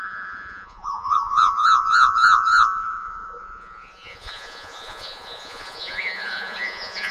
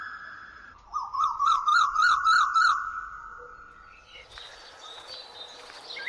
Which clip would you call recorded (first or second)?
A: second